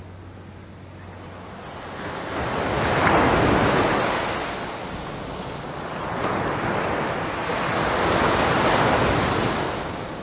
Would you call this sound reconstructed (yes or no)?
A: no